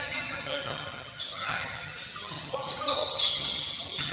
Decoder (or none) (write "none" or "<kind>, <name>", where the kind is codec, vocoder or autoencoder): vocoder, HiFi-GAN